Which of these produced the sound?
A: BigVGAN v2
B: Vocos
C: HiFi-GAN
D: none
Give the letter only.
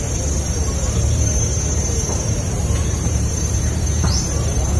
A